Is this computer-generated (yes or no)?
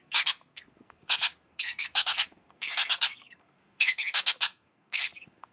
yes